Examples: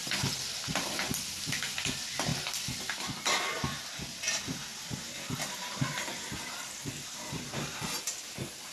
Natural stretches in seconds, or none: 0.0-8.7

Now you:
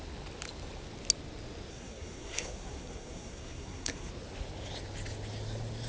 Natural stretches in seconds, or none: 0.0-1.7; 4.1-5.9

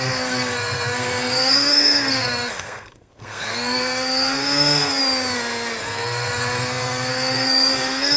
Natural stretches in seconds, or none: 5.0-5.8

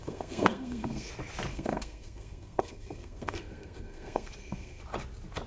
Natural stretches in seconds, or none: 1.1-1.5; 4.8-5.5

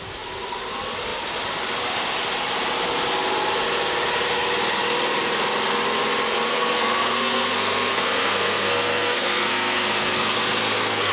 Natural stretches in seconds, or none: 0.0-6.5

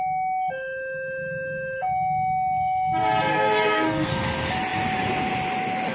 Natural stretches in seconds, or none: 0.0-3.3; 4.1-5.9

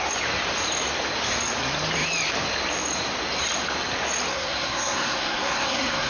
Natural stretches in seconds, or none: 0.0-4.3